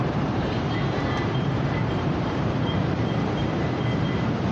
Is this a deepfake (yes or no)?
yes